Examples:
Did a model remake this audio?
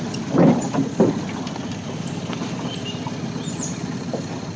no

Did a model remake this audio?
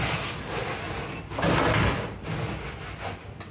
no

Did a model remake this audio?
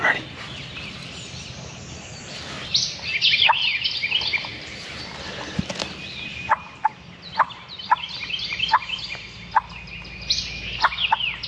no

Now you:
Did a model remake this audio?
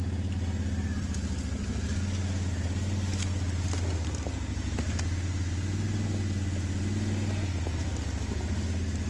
no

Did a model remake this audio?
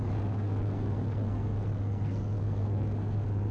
yes